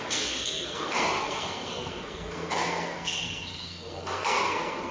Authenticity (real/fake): fake